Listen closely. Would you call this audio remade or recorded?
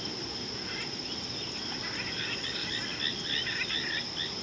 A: recorded